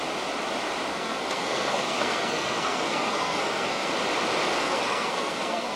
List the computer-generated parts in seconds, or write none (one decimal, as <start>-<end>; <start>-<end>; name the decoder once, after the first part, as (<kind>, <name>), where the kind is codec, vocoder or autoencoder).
0.9-3.9 (codec, SNAC); 4.5-5.8